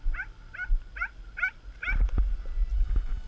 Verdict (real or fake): real